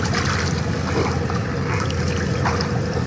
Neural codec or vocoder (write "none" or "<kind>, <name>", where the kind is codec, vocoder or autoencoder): none